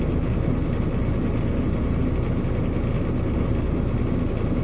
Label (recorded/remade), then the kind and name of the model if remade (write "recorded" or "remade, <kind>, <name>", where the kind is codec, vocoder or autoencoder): recorded